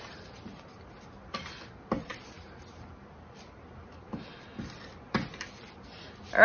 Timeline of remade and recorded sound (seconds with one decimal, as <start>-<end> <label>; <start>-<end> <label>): 0.0-6.4 recorded